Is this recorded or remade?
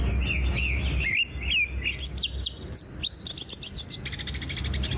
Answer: recorded